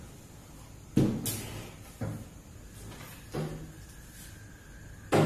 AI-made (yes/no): no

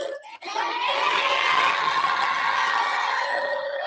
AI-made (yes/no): yes